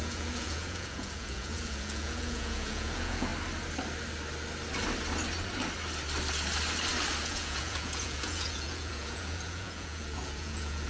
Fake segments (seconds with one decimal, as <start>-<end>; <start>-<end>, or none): 0.0-3.3; 7.2-10.9

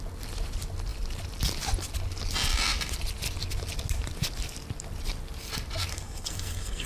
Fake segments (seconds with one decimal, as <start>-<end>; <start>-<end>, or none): 5.9-6.9

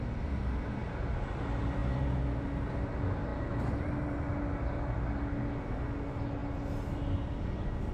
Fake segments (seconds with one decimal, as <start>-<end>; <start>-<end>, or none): none